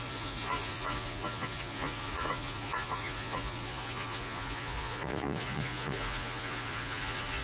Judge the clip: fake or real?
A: fake